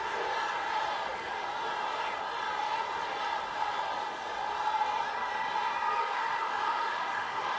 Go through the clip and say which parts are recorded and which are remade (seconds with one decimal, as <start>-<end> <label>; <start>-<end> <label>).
0.0-6.0 recorded; 6.0-7.6 remade